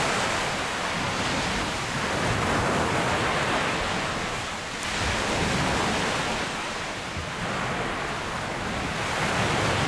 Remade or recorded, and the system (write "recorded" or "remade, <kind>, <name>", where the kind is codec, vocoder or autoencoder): recorded